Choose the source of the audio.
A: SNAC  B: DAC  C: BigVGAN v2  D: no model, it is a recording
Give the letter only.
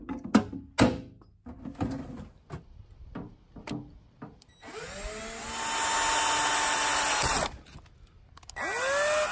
D